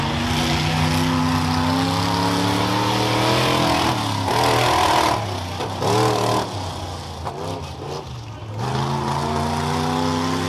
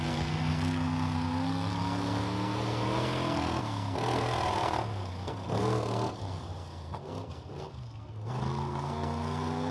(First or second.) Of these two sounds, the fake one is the second